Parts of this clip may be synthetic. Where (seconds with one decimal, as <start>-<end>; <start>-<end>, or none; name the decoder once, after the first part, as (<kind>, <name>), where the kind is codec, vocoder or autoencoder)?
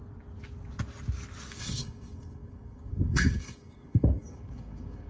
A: 1.5-5.1 (codec, DAC)